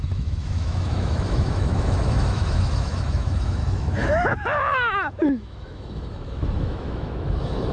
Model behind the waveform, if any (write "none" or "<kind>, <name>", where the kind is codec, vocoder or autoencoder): autoencoder, DAC-VAE